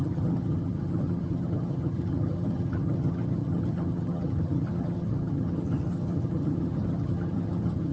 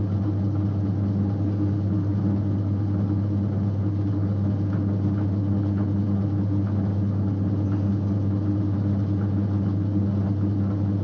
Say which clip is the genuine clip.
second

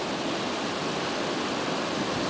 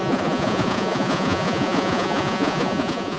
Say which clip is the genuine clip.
first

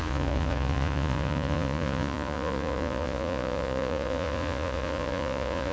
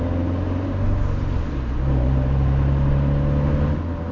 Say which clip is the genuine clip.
second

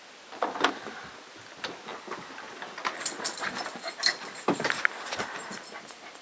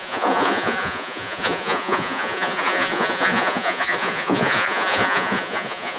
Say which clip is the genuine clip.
first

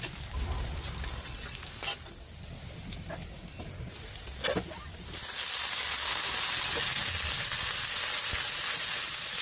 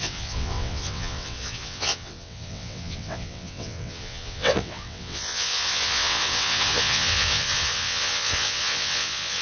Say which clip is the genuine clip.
first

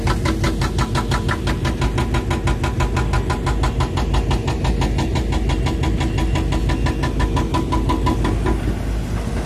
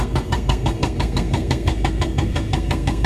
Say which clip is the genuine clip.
first